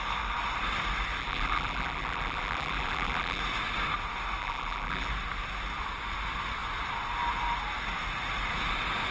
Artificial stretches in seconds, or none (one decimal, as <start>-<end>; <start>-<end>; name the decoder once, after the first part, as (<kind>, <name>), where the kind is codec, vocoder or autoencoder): 1.2-3.4 (vocoder, BigVGAN v2); 4.4-5.1